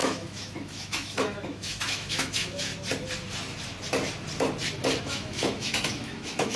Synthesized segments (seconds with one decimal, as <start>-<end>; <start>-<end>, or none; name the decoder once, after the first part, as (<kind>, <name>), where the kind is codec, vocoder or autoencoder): 0.0-2.7 (autoencoder, DAC-VAE); 5.0-6.6